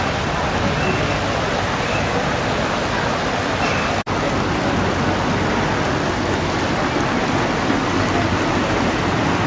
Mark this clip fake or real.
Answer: real